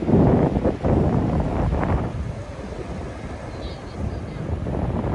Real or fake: real